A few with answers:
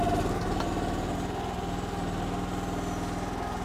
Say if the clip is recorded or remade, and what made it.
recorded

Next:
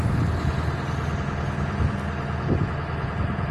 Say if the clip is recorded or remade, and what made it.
recorded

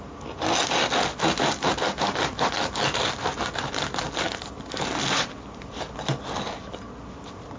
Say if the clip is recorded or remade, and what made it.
recorded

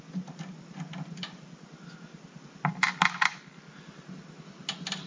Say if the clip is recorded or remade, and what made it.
recorded